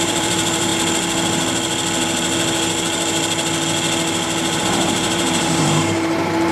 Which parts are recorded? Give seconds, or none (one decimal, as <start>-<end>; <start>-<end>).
0.7-4.6